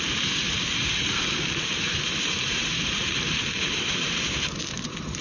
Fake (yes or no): yes